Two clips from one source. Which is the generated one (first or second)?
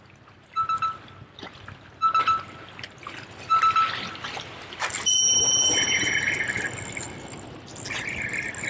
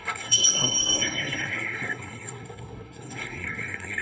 second